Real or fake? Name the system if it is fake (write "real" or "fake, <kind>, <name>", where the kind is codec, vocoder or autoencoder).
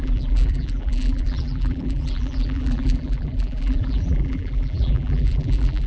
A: fake, vocoder, BigVGAN v2